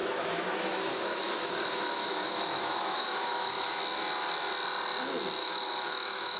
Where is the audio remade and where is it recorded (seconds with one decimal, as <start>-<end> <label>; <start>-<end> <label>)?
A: 0.0-3.8 remade; 3.8-5.4 recorded; 5.4-6.4 remade